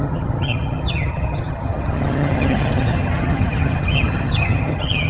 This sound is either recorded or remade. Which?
remade